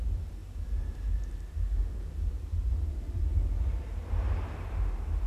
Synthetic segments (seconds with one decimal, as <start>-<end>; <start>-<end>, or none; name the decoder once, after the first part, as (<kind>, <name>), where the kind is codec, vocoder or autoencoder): 0.0-5.3 (vocoder, BigVGAN v2)